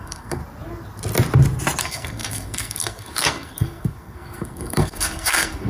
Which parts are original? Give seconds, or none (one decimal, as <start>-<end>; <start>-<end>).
0.4-1.8